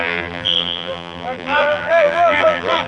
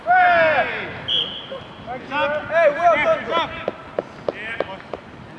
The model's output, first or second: first